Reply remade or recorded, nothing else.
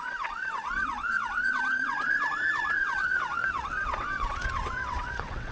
remade